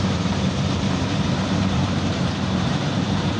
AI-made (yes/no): yes